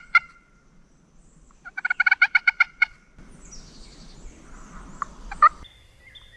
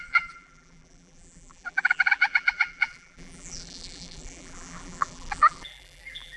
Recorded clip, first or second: first